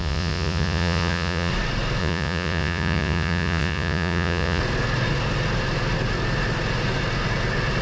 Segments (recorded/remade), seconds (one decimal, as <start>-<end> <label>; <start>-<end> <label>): 0.0-1.5 remade; 1.5-2.0 recorded; 2.0-4.6 remade; 4.6-7.8 recorded